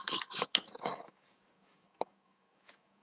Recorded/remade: remade